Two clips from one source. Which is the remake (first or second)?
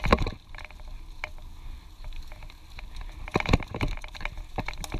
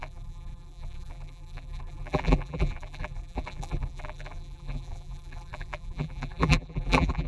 second